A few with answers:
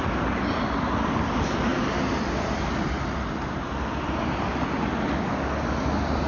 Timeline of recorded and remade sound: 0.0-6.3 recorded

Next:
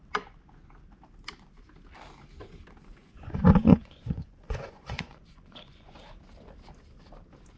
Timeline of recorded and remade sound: 0.0-3.0 recorded; 3.0-6.0 remade; 6.0-7.6 recorded

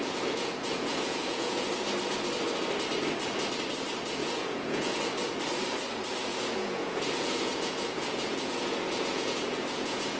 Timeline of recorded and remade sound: 0.0-1.7 remade; 1.7-4.2 recorded; 4.2-5.1 remade; 5.1-6.3 recorded; 6.3-10.2 remade

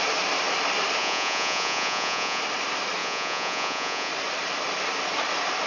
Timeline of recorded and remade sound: 0.0-1.0 recorded; 1.0-2.4 remade; 2.4-3.0 recorded; 3.0-4.1 remade; 4.1-5.7 recorded